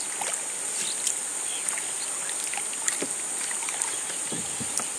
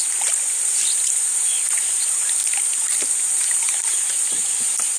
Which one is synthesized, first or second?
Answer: second